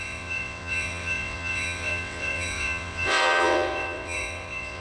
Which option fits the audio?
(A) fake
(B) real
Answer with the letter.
A